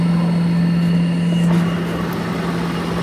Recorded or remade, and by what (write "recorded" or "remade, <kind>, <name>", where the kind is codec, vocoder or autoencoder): recorded